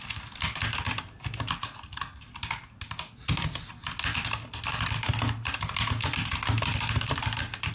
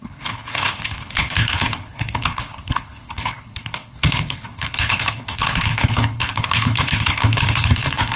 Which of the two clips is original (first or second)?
first